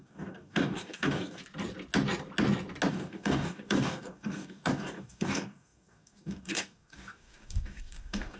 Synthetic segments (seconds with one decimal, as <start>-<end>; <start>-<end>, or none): 0.0-1.4; 2.9-8.4

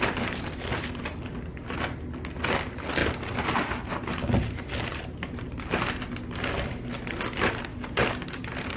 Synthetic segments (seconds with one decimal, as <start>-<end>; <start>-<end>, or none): none

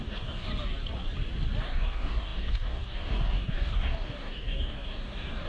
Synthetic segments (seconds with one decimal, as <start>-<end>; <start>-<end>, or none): 0.0-0.5; 1.6-5.5

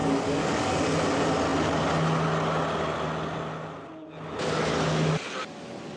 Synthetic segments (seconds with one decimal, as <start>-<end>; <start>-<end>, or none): 0.0-0.7

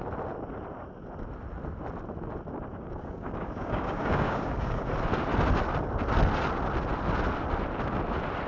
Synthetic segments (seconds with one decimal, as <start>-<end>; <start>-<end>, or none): 2.7-4.9

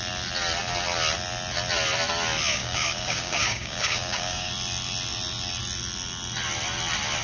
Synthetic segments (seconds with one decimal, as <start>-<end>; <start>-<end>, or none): 2.6-4.5